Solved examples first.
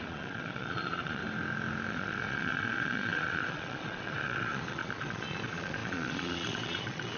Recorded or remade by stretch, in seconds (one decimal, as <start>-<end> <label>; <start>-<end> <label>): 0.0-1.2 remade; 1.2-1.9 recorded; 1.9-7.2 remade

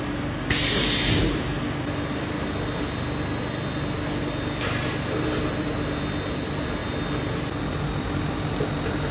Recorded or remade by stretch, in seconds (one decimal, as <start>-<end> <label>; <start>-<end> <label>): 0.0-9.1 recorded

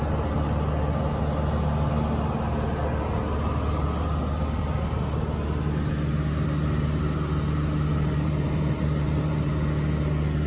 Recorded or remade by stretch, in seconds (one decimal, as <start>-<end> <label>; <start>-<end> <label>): 0.0-7.9 recorded; 7.9-9.5 remade; 9.5-10.5 recorded

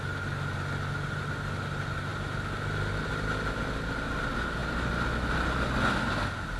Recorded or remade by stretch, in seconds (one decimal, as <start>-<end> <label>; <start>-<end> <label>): 0.0-6.6 recorded

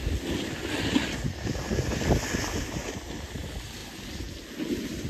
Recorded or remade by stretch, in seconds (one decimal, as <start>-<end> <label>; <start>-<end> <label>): 0.0-5.1 recorded

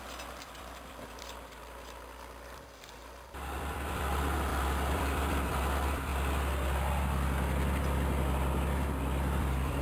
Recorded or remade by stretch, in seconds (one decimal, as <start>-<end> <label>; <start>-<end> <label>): 0.0-6.1 remade; 6.1-9.4 recorded; 9.4-9.8 remade

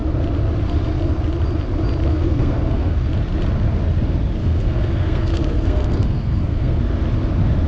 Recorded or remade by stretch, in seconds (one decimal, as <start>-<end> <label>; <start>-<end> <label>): 0.0-2.1 recorded; 2.1-3.1 remade; 3.1-4.4 recorded; 4.4-6.8 remade; 6.8-7.7 recorded